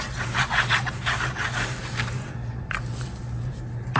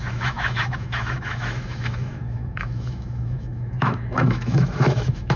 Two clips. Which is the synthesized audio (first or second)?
second